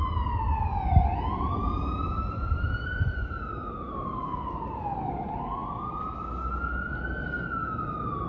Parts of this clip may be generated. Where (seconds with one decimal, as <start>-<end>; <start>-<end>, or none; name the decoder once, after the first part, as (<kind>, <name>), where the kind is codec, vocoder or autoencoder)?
1.6-3.4 (vocoder, BigVGAN v2)